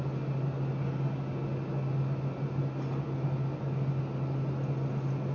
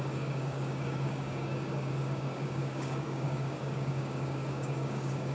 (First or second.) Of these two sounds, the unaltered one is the first